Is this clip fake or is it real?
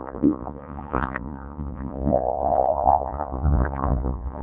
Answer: fake